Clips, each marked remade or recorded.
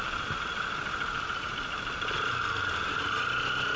recorded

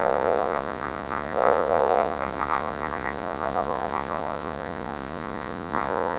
remade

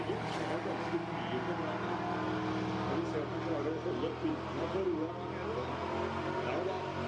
recorded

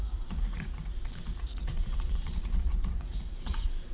remade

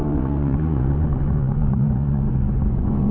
remade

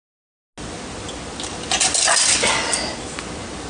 recorded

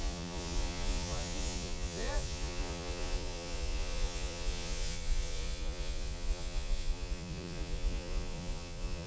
remade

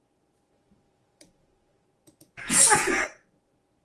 remade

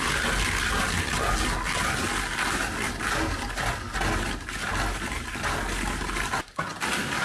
recorded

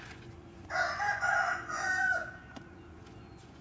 remade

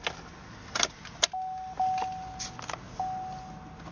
recorded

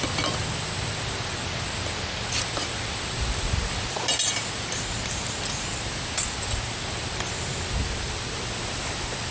recorded